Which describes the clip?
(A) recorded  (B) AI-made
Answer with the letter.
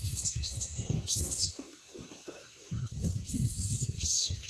B